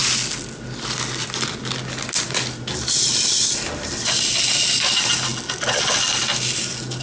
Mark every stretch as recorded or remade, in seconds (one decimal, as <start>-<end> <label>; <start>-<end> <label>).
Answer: 0.0-7.0 recorded